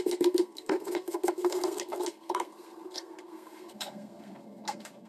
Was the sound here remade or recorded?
remade